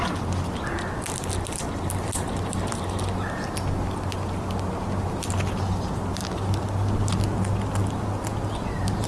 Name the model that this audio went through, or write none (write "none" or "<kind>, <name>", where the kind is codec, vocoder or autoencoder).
none